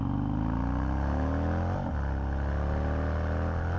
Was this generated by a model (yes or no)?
no